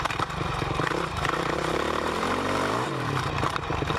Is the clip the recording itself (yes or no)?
no